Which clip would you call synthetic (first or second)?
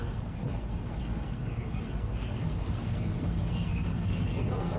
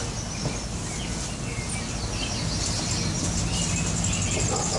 first